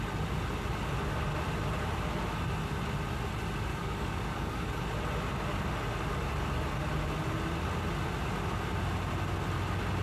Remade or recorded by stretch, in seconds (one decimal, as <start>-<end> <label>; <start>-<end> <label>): 0.0-3.7 recorded; 3.7-4.8 remade; 4.8-10.0 recorded